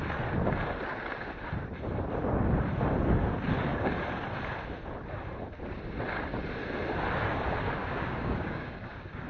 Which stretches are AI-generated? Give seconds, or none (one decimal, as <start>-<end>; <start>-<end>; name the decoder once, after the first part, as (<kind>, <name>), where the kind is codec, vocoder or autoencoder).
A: 7.8-9.3 (codec, DAC)